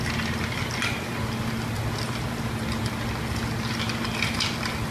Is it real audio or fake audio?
real